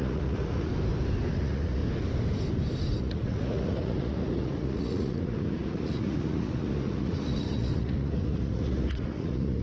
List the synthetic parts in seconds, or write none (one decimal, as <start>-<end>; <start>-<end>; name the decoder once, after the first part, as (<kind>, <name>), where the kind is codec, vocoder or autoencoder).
0.0-0.7 (vocoder, Vocos); 1.3-1.8; 3.0-9.6